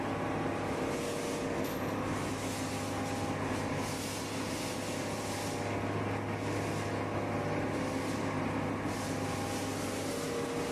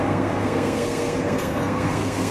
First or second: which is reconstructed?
second